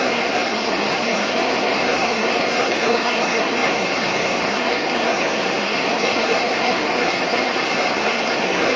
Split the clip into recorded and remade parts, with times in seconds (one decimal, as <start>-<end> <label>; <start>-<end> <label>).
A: 0.0-8.8 remade